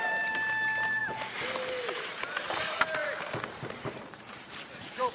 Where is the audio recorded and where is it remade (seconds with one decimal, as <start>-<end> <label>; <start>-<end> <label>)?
0.0-3.0 recorded; 3.0-5.1 remade

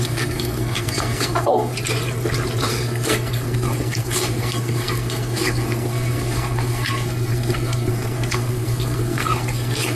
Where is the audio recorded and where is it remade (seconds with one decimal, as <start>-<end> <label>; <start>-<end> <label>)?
0.0-1.7 remade; 1.7-2.7 recorded; 2.7-9.9 remade

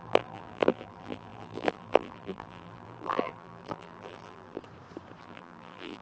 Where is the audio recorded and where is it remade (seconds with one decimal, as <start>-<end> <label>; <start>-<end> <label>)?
0.0-4.6 remade; 4.6-5.2 recorded; 5.2-6.0 remade

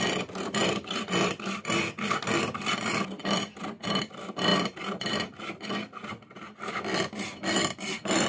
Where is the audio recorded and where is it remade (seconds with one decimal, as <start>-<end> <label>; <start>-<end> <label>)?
0.0-0.6 recorded; 0.6-1.5 remade; 1.5-3.2 recorded; 3.2-3.8 remade; 3.8-8.3 recorded

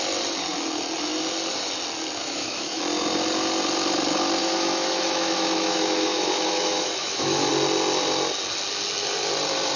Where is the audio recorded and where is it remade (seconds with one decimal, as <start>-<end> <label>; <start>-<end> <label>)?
0.0-2.2 recorded; 2.2-2.8 remade; 2.8-4.4 recorded; 4.4-7.5 remade; 7.5-9.8 recorded